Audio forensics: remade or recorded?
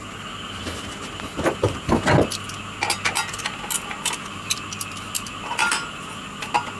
recorded